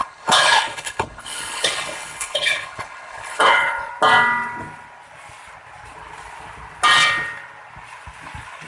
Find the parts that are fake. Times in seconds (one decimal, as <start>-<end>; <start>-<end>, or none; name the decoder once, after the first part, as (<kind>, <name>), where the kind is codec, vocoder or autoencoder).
0.0-3.9 (codec, HILCodec)